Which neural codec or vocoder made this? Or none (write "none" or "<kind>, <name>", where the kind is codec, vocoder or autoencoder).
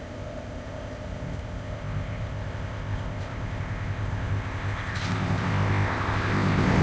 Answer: codec, ZipCodec